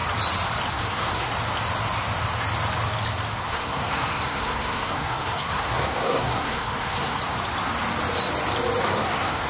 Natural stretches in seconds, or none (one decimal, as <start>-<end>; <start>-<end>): 0.0-0.7; 1.3-3.5; 7.2-8.8